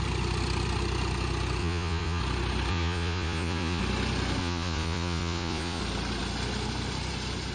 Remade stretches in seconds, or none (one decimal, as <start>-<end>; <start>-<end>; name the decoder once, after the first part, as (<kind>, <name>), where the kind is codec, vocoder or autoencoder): 1.6-2.2 (vocoder, Vocos); 2.7-3.8; 4.4-5.8